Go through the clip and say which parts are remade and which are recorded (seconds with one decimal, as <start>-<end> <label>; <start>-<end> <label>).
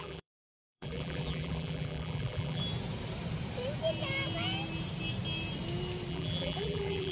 0.0-2.6 remade; 2.6-6.1 recorded; 6.1-7.1 remade